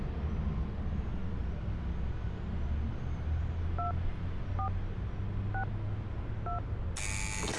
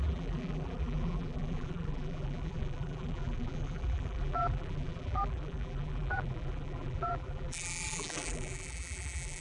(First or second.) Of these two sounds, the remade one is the second